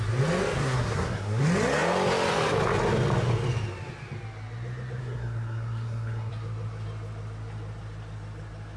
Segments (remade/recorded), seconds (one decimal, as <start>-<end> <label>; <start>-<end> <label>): 0.0-0.6 recorded; 0.6-1.4 remade; 1.4-5.0 recorded; 5.0-6.3 remade; 6.3-8.8 recorded